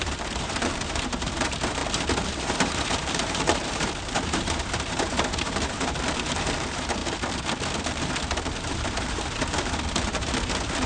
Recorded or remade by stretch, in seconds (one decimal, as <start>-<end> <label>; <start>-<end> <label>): 0.0-7.0 remade; 7.0-7.9 recorded; 7.9-10.9 remade